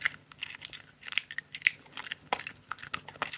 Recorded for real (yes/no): yes